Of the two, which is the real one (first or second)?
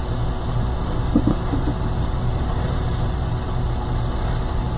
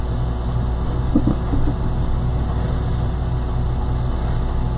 second